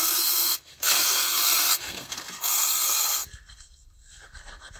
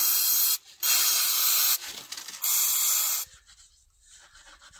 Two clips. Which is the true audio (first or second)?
second